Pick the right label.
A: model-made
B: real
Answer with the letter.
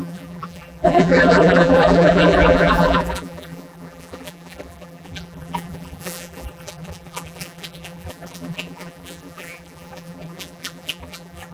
A